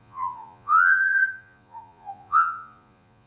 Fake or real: fake